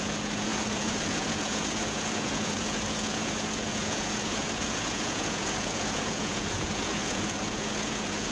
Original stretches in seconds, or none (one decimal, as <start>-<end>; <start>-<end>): none